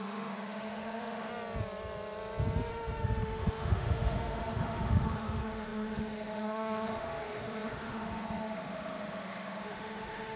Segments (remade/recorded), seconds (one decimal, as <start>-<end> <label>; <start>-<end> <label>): 0.0-1.3 remade; 1.3-2.7 recorded; 2.7-10.4 remade